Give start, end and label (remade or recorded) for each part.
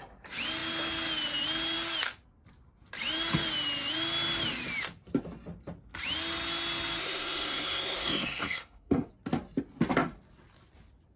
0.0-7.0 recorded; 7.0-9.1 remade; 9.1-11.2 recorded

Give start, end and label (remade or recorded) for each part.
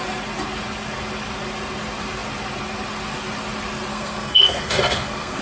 0.0-3.9 recorded; 3.9-5.4 remade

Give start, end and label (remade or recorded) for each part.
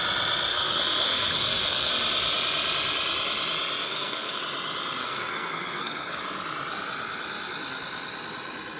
0.0-0.5 recorded; 0.5-1.9 remade; 1.9-3.8 recorded; 3.8-4.4 remade; 4.4-5.0 recorded; 5.0-6.2 remade; 6.2-8.8 recorded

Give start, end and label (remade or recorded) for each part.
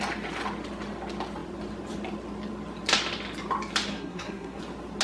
0.0-3.9 recorded; 3.9-4.6 remade; 4.6-5.0 recorded